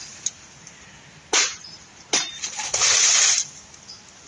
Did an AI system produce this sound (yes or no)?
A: no